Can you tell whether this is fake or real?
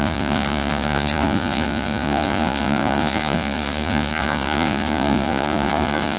fake